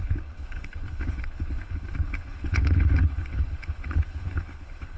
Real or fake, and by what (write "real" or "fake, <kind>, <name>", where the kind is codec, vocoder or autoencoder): fake, codec, HILCodec